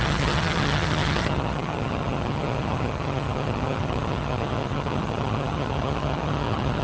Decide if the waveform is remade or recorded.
remade